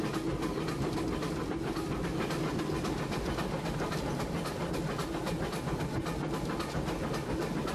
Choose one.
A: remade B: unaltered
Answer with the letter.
B